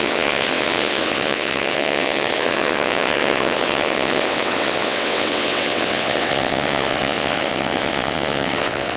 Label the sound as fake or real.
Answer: fake